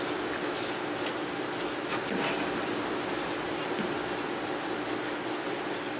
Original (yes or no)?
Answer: yes